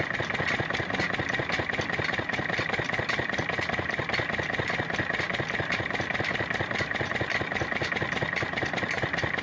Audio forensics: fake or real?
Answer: real